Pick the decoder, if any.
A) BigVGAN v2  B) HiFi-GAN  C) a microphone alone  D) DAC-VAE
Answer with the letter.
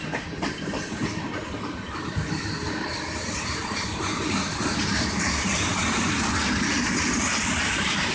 C